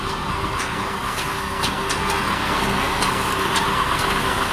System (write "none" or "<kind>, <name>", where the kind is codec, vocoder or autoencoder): codec, SNAC